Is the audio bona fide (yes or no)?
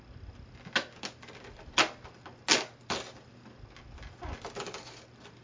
yes